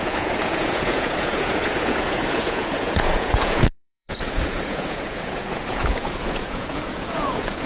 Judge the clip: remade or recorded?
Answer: remade